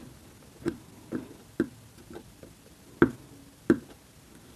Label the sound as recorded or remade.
remade